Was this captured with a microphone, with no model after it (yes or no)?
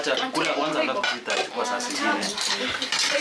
yes